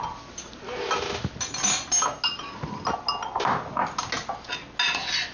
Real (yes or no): yes